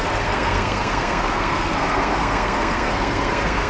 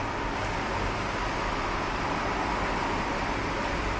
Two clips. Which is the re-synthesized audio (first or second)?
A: first